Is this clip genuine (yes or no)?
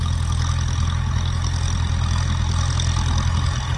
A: yes